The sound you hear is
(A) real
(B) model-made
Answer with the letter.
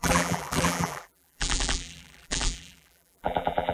B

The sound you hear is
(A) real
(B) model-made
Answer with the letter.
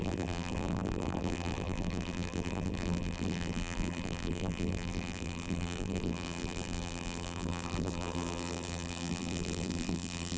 B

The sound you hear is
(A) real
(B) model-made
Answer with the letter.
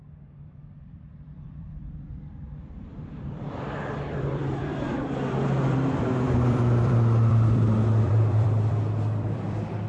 B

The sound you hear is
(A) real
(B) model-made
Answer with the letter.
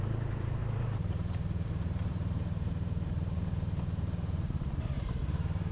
B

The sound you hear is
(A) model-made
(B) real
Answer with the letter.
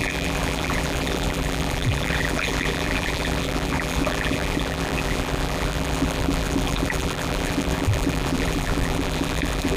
A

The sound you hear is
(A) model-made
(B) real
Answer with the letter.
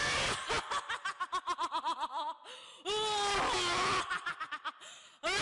B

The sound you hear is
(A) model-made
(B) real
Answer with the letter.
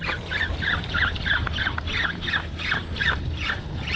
A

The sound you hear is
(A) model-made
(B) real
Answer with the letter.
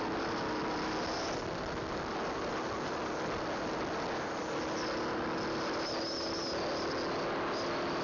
B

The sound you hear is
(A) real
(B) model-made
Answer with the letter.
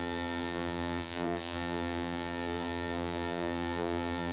B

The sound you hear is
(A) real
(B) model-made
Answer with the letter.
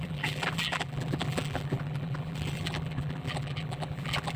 B